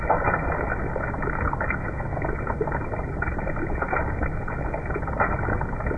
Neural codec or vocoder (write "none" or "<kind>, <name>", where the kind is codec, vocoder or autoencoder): none